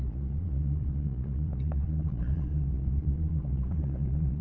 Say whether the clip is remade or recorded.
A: remade